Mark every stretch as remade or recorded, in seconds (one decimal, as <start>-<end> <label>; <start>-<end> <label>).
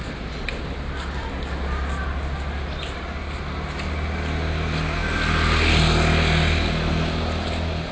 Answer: 0.0-7.9 recorded